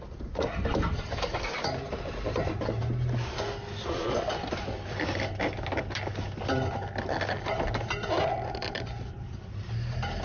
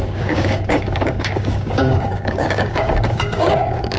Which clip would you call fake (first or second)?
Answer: second